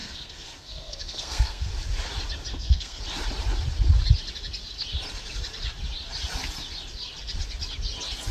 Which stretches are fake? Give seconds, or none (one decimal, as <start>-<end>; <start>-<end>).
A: 0.0-1.7; 2.5-3.0